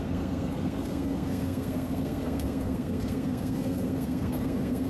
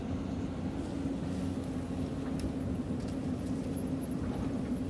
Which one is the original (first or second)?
second